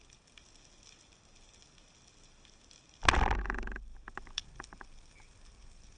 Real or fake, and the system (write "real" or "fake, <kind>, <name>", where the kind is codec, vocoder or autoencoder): real